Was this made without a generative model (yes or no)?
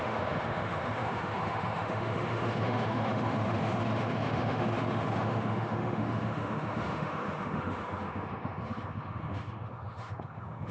no